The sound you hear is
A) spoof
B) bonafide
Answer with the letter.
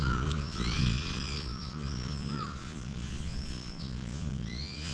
A